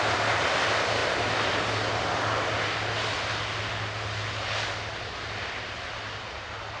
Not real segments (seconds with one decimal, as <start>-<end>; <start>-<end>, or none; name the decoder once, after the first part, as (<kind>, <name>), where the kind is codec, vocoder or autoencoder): none